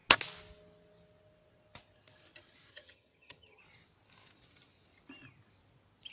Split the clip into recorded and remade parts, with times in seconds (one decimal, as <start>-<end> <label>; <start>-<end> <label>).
0.0-2.7 recorded; 2.7-3.6 remade; 3.6-6.1 recorded